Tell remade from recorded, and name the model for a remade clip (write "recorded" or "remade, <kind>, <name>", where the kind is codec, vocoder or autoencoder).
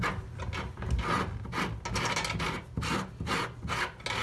recorded